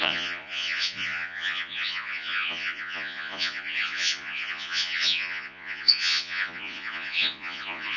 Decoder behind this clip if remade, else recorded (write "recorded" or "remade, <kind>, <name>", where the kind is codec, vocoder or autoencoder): remade, vocoder, Vocos